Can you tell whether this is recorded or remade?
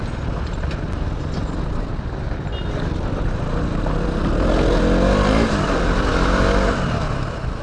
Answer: recorded